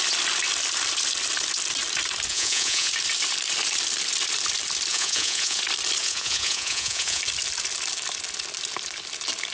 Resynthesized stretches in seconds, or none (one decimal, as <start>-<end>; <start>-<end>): 2.3-2.9; 4.9-5.6; 6.0-7.2